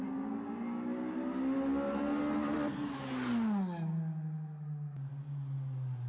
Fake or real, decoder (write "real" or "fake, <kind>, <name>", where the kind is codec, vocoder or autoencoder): real